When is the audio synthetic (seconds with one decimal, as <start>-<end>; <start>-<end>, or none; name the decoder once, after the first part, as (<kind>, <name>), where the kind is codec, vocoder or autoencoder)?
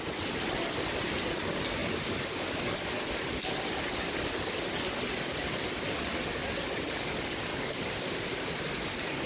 none